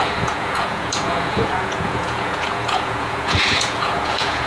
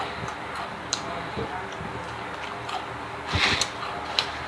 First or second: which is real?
second